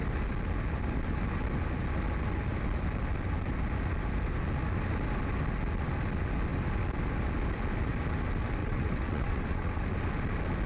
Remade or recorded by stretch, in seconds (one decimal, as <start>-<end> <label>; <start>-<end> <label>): 0.0-8.6 recorded; 8.6-9.8 remade; 9.8-10.7 recorded